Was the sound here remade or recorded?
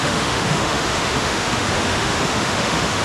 remade